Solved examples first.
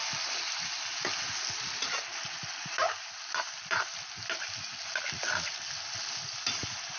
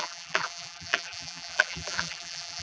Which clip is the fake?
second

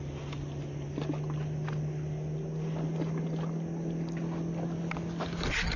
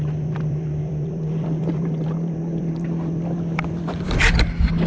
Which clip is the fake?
second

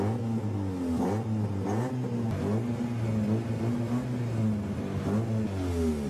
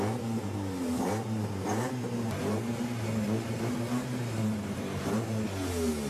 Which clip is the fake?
second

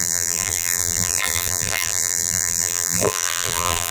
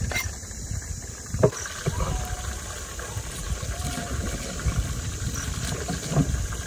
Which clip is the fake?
first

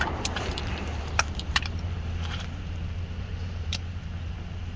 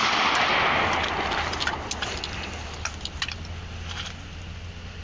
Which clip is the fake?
first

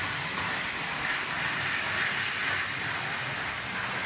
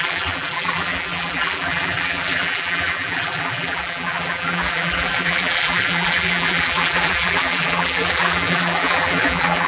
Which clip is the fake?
second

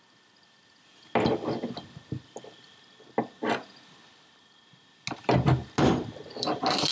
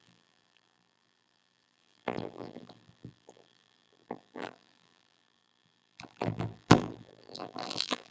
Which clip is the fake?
second